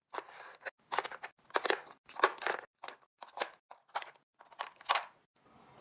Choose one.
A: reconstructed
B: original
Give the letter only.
B